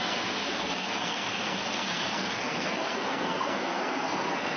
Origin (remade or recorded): remade